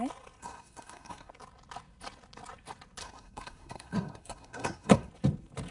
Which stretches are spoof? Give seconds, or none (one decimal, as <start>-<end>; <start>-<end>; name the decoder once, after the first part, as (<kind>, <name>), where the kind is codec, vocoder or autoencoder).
0.4-1.3 (codec, SNAC); 3.0-5.1